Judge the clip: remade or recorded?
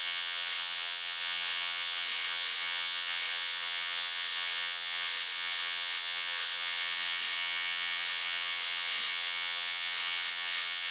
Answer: remade